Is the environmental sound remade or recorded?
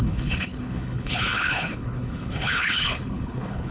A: remade